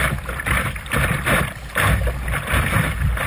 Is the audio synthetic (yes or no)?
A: yes